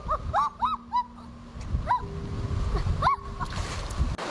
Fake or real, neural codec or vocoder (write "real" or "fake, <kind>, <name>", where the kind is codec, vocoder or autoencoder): real